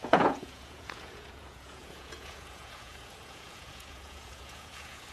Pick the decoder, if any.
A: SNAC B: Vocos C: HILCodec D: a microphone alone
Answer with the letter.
B